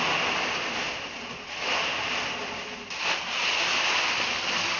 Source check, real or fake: real